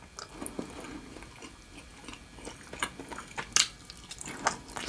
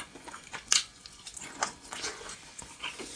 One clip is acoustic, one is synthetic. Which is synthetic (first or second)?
second